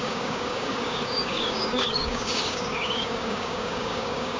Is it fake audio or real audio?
fake